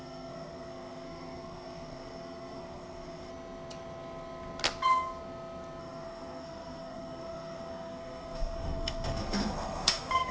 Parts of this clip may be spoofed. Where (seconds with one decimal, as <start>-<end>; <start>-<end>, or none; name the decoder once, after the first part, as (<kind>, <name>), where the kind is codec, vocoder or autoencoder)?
0.0-3.3 (codec, SNAC); 5.8-10.3